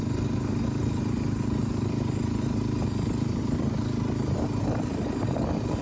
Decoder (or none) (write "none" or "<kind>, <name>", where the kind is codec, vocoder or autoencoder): none